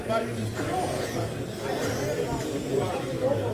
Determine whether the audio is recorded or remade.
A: recorded